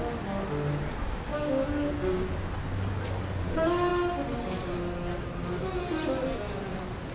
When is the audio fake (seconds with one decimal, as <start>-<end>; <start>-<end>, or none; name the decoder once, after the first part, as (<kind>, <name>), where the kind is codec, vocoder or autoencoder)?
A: 1.3-2.5 (codec, DAC)